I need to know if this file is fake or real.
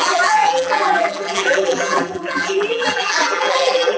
fake